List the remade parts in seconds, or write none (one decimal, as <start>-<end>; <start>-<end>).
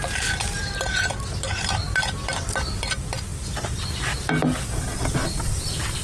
none